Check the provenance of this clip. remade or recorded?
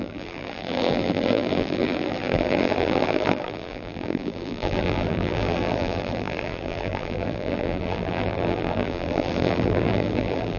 remade